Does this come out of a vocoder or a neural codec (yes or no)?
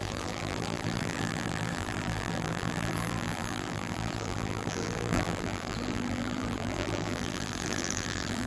yes